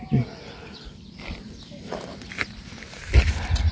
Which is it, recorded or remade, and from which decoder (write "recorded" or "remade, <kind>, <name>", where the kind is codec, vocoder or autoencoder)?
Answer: recorded